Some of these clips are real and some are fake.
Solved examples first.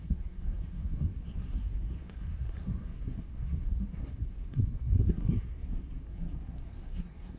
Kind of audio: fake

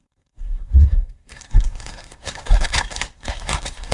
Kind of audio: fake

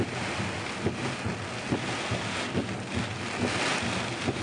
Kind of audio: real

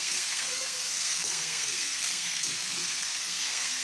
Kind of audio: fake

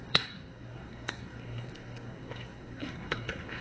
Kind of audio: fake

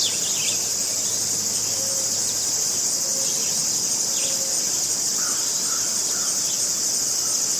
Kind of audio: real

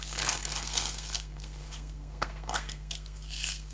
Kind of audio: fake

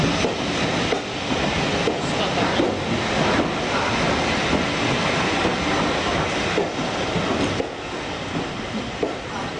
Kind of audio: real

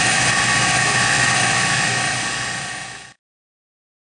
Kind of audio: real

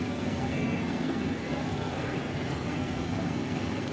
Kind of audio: fake